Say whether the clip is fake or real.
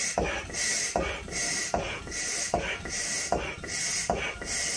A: real